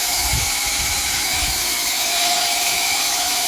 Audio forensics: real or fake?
fake